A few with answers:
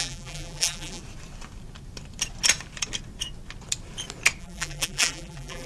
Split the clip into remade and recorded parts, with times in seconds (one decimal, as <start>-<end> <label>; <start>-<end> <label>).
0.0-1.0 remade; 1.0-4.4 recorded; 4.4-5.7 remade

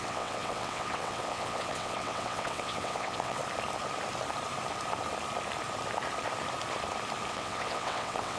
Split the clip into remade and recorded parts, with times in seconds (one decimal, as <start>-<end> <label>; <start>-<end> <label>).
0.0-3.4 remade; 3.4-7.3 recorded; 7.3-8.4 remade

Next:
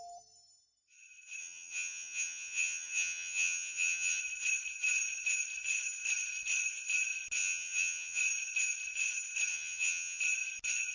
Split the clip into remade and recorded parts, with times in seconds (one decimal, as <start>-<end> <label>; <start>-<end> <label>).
0.0-1.4 recorded; 1.4-4.2 remade; 4.2-7.4 recorded; 7.4-8.2 remade; 8.2-9.5 recorded; 9.5-10.2 remade; 10.2-10.9 recorded